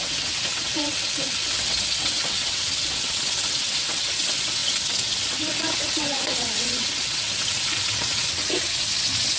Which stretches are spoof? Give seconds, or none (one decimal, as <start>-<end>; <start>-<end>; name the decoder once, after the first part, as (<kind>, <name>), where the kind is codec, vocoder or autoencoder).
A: 0.0-9.4 (vocoder, WaveNeXt)